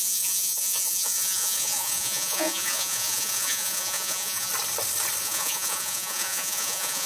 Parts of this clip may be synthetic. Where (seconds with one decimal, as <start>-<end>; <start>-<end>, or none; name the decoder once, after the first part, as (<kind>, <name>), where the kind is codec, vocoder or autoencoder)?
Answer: 0.0-4.5 (vocoder, Vocos); 5.2-7.1